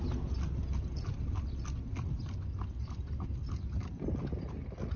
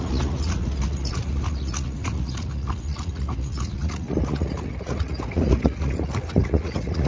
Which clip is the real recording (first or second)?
first